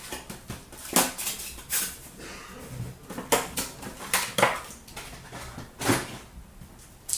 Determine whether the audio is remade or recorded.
recorded